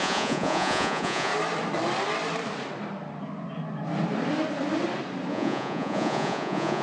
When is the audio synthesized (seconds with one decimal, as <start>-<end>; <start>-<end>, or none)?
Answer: 0.0-1.3; 5.3-6.8